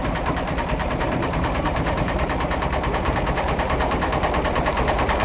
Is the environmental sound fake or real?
fake